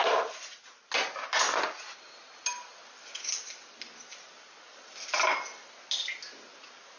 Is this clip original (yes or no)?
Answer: yes